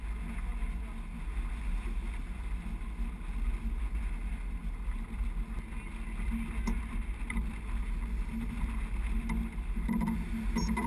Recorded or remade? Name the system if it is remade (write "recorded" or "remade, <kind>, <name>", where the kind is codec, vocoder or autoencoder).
recorded